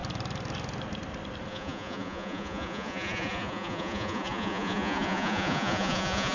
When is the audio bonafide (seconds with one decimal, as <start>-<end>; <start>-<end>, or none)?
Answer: 0.0-1.5